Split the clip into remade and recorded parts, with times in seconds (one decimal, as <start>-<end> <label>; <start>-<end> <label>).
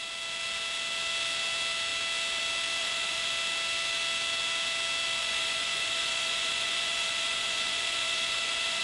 0.0-2.8 recorded; 2.8-3.3 remade; 3.3-5.2 recorded; 5.2-8.8 remade